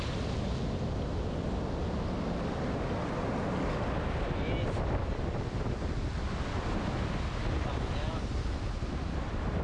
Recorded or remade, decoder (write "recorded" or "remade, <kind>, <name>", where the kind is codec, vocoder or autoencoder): recorded